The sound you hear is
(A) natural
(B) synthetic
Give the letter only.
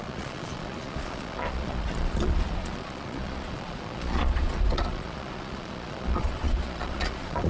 B